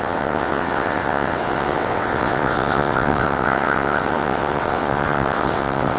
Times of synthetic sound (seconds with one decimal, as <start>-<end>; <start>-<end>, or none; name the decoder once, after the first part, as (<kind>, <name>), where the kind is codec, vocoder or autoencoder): 0.0-6.0 (vocoder, WaveNeXt)

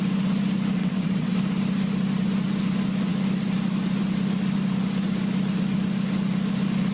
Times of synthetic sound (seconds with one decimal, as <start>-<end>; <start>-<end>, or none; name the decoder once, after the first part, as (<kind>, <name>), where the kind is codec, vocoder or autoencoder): 0.8-1.4 (vocoder, WaveNeXt)

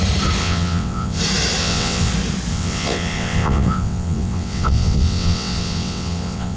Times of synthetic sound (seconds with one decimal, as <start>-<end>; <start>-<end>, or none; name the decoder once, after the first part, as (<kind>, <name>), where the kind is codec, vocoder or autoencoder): 0.4-1.2 (vocoder, WaveNeXt); 1.6-2.1; 2.5-6.6

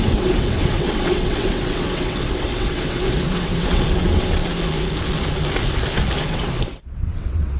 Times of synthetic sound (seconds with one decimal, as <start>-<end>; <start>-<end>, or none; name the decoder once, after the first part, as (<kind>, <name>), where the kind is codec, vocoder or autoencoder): 0.0-4.4 (vocoder, WaveNeXt); 6.2-7.6

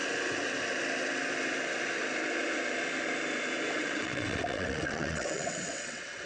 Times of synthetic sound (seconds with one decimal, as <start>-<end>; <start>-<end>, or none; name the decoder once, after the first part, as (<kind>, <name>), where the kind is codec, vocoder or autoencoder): 3.8-6.3 (vocoder, WaveNeXt)

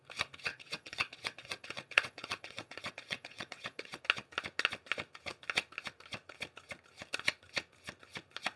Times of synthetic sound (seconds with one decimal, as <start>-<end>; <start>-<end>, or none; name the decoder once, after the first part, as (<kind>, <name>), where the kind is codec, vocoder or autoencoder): 0.5-4.0 (vocoder, WaveNeXt)

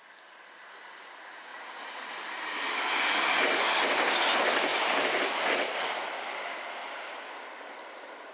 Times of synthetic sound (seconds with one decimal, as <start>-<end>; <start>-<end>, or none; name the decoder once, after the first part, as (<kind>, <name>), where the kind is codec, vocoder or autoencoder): none